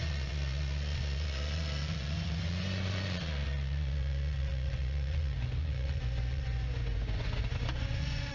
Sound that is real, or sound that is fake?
fake